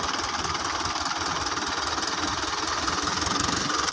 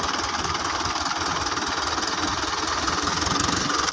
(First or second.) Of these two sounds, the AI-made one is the first